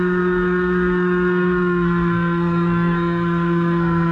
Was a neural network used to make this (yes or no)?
yes